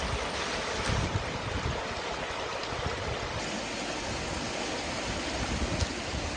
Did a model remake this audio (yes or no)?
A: no